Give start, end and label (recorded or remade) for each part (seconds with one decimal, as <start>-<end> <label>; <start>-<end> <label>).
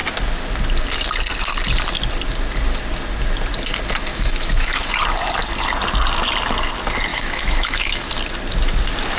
0.0-4.1 recorded; 4.1-4.9 remade; 4.9-7.1 recorded; 7.1-8.1 remade; 8.1-9.2 recorded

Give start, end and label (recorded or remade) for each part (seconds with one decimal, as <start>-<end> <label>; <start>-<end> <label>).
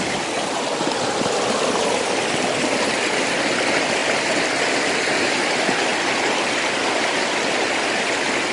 0.0-8.5 recorded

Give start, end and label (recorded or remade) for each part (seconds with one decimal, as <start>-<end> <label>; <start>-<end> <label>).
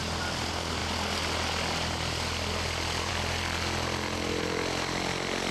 0.0-5.5 recorded